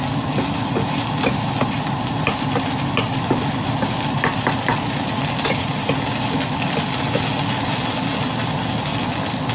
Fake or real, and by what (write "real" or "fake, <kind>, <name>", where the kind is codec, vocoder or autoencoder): real